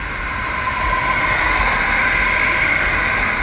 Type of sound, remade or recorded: recorded